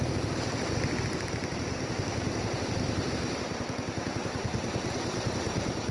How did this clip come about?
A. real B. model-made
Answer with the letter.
B